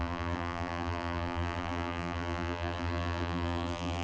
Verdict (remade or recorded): remade